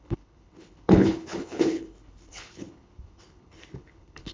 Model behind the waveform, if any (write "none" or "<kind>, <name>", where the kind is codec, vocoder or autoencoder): codec, HILCodec